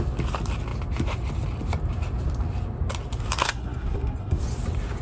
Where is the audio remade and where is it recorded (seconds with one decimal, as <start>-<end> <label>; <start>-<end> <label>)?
0.0-3.4 recorded; 3.4-4.4 remade; 4.4-5.0 recorded